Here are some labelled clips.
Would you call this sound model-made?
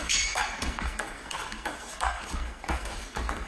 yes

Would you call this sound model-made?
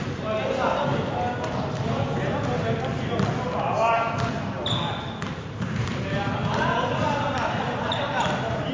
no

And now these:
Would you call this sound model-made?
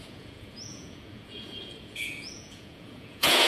yes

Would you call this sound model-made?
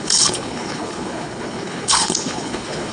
yes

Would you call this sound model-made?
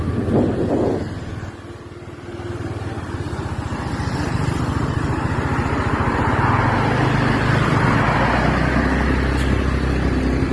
no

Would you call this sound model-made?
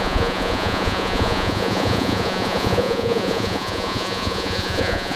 yes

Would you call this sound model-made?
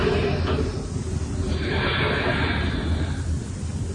no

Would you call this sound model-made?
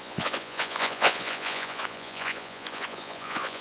yes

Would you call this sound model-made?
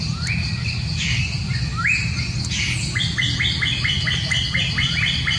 no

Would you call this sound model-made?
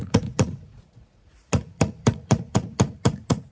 yes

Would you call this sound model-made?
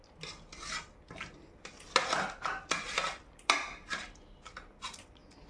no